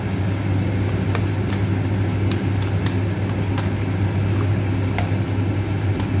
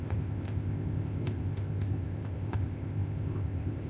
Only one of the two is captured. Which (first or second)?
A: first